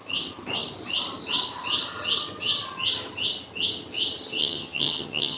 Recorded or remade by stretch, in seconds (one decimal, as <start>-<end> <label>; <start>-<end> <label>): 0.0-4.4 recorded; 4.4-5.4 remade